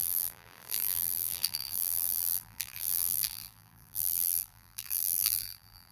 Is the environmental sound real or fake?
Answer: fake